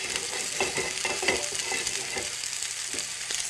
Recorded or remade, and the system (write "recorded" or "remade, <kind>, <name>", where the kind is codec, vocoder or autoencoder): recorded